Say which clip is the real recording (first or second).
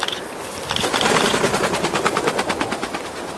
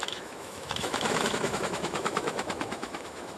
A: first